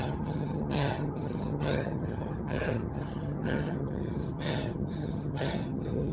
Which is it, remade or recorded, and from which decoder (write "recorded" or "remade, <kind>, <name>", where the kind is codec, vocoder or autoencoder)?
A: remade, vocoder, HiFi-GAN